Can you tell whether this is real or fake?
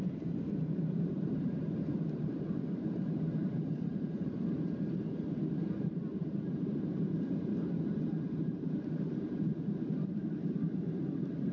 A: fake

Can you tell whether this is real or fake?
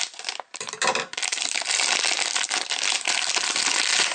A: real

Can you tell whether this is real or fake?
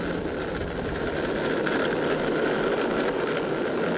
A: real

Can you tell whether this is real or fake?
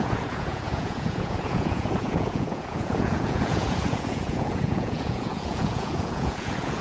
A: fake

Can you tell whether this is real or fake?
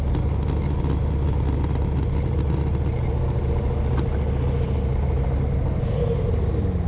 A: real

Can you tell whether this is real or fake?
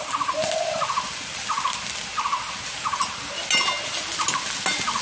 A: real